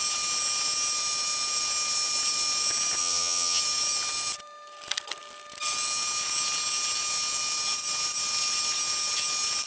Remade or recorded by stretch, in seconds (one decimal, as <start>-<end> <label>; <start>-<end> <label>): 0.0-3.0 recorded; 3.0-3.6 remade; 3.6-9.7 recorded